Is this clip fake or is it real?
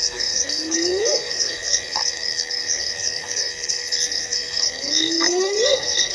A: fake